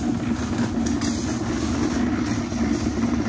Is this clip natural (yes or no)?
yes